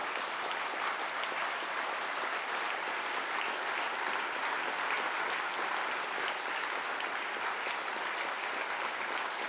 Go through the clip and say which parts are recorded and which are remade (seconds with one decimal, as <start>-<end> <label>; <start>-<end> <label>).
0.0-9.5 recorded